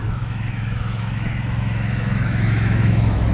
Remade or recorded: remade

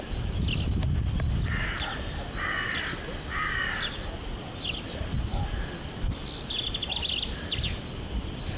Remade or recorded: recorded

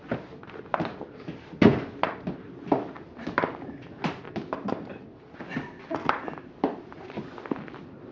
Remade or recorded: recorded